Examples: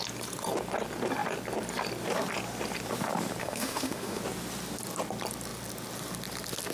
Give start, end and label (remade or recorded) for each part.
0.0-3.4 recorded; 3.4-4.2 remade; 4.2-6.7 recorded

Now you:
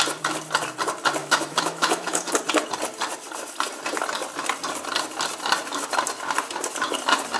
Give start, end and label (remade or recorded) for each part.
0.0-1.2 recorded; 1.2-2.3 remade; 2.3-7.4 recorded